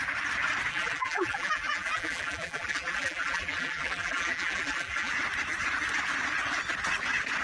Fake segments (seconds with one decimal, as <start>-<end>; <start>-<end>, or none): 0.7-5.1